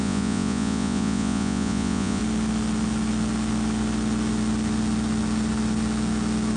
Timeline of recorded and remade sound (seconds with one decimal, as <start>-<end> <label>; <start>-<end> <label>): 0.0-2.2 remade; 2.2-6.6 recorded